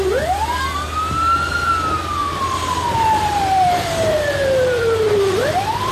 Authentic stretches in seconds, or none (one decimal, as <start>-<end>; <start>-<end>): 0.0-2.2